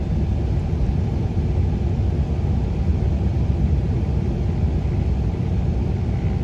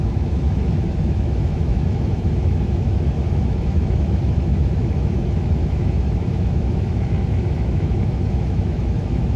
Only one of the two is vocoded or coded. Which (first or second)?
second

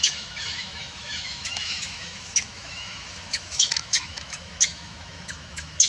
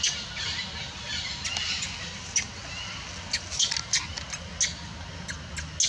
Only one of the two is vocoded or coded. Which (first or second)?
first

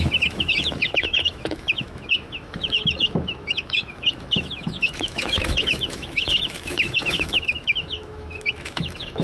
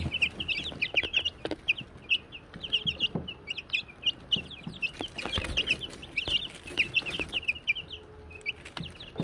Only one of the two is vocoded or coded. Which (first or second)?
first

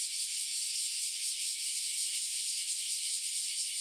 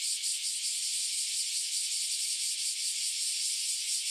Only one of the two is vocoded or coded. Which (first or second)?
first